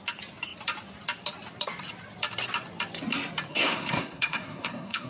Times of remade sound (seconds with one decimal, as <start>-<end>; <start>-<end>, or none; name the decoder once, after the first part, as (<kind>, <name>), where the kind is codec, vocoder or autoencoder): 3.5-5.1 (codec, SNAC)